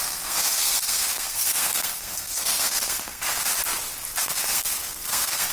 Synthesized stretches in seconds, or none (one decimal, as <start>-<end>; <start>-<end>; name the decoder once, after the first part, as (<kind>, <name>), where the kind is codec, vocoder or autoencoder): 0.0-3.5 (codec, SNAC); 4.2-5.5